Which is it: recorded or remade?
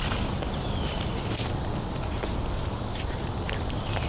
remade